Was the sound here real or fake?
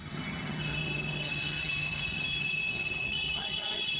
fake